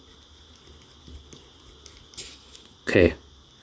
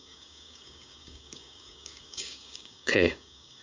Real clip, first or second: first